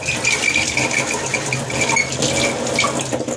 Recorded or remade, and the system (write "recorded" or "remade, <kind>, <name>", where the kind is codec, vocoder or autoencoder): recorded